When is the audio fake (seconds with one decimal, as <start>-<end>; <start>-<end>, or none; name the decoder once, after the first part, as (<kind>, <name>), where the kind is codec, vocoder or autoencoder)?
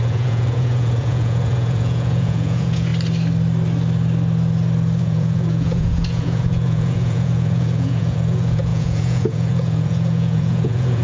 0.0-2.9 (vocoder, Vocos); 5.0-11.0